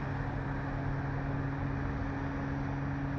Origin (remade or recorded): recorded